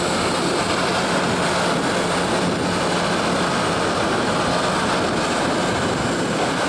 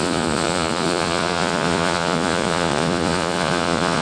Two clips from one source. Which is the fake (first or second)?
second